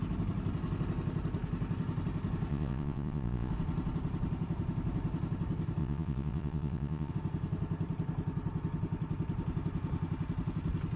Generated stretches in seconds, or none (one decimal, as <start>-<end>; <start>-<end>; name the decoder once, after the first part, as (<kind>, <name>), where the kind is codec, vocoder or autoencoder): 2.5-3.5 (vocoder, Vocos); 5.8-7.1